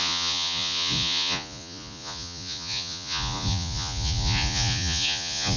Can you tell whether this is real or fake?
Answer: fake